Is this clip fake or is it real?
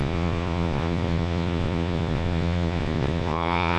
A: fake